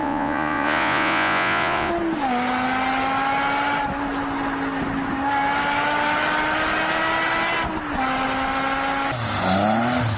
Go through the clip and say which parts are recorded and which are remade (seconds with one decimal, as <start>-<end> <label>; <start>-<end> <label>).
0.0-1.9 remade; 1.9-10.2 recorded